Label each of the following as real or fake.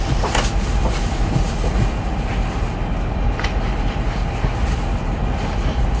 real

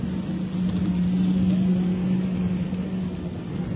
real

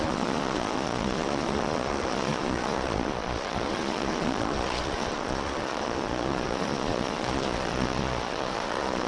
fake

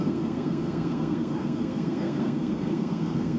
fake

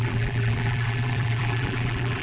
fake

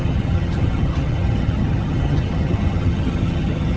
fake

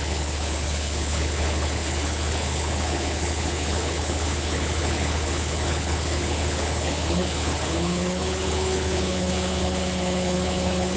fake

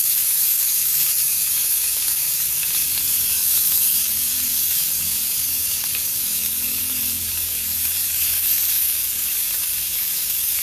fake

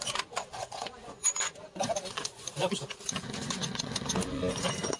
fake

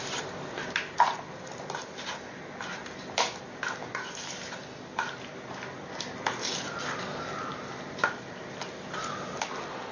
real